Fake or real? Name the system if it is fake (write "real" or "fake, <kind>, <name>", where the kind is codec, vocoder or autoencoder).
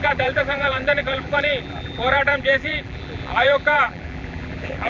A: fake, vocoder, BigVGAN v2